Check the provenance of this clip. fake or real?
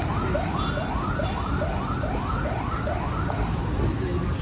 real